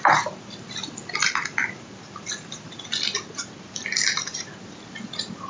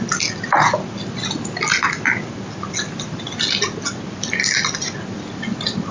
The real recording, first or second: second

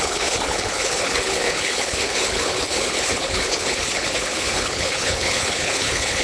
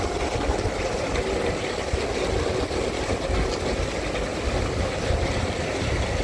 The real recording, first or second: second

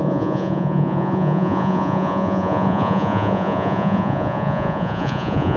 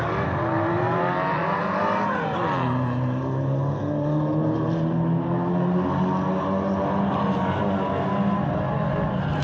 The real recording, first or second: second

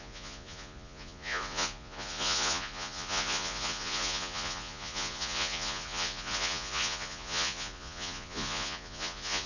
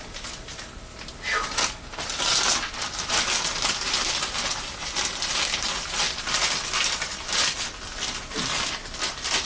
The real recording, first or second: second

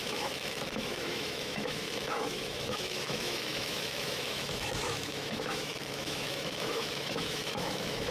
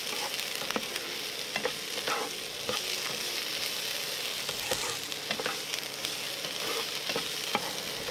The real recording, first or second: second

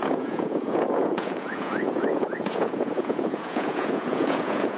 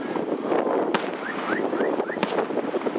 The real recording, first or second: second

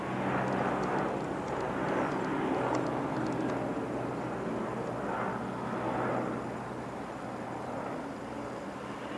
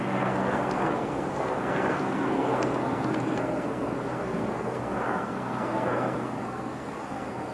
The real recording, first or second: first